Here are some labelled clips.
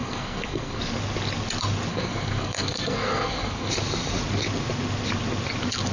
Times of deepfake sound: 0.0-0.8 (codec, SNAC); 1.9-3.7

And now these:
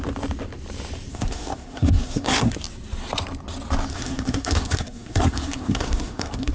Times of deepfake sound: 1.1-2.5 (codec, SNAC); 3.9-6.5